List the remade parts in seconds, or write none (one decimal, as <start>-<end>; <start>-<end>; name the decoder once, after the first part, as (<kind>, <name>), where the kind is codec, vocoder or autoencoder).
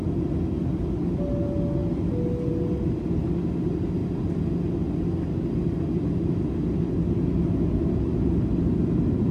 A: none